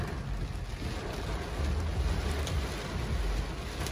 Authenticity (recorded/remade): recorded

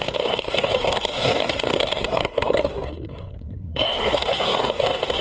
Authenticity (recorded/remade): remade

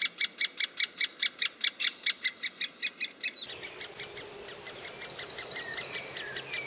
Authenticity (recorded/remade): recorded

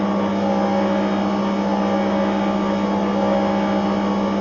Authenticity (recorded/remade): recorded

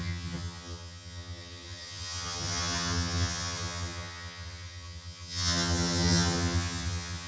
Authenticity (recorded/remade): remade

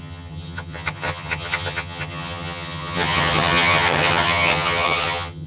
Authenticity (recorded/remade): remade